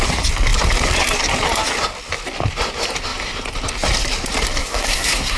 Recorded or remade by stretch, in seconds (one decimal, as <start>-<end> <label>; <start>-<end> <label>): 0.0-4.6 recorded; 4.6-5.4 remade